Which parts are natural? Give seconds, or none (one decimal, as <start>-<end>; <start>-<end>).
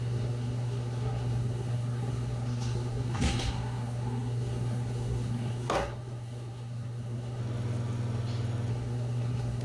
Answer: 7.4-8.7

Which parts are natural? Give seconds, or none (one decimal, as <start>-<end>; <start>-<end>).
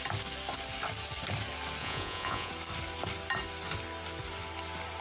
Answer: 0.0-1.8; 2.5-5.0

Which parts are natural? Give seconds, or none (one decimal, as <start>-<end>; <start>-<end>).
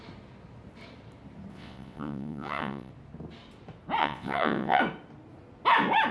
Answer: 0.0-1.5; 2.9-4.0; 4.8-6.1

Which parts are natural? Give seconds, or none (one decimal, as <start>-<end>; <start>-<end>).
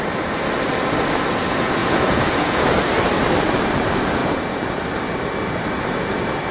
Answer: 0.0-1.8; 2.7-4.2; 4.8-6.5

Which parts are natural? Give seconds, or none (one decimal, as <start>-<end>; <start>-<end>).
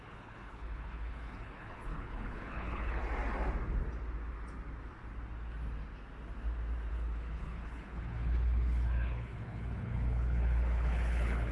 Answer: 3.0-6.9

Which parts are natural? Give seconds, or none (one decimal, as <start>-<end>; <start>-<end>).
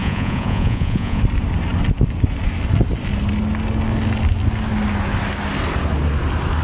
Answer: 1.2-6.6